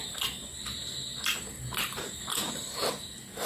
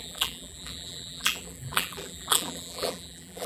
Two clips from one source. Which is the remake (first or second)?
second